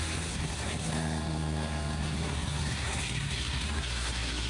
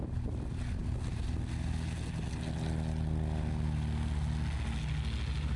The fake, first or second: first